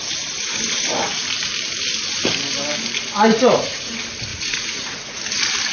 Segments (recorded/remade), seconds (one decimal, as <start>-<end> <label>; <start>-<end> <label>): 0.0-3.3 recorded; 3.3-3.9 remade; 3.9-4.3 recorded; 4.3-5.2 remade; 5.2-5.7 recorded